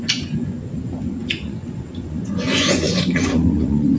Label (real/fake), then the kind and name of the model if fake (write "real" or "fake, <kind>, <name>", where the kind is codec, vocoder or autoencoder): fake, vocoder, Vocos